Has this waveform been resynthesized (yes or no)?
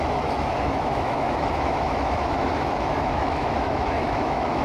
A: yes